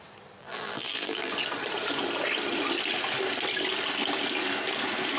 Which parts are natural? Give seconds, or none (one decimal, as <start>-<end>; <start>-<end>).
0.0-0.4; 1.3-5.2